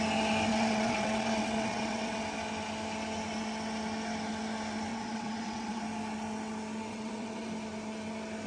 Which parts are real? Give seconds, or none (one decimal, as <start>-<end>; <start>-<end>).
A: 0.0-0.5; 2.2-4.9; 5.8-6.9; 7.5-8.5